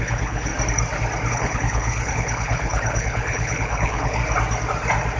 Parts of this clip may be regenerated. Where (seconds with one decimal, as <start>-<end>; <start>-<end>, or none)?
0.0-0.5; 1.3-4.2